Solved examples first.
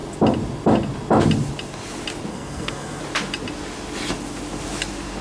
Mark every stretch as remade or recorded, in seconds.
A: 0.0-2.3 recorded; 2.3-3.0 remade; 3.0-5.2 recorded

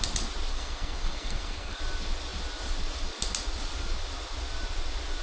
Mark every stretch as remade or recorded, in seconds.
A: 0.0-0.5 recorded; 0.5-1.8 remade; 1.8-5.2 recorded